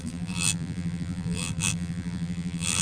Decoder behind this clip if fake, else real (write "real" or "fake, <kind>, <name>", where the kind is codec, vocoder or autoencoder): fake, vocoder, BigVGAN v2